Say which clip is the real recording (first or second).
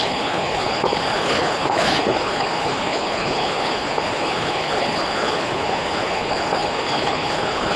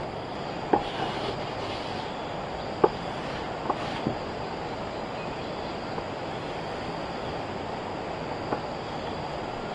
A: second